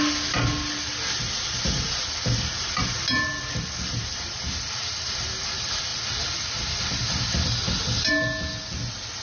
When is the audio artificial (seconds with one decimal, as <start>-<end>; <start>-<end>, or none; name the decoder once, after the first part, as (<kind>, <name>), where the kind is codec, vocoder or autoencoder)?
none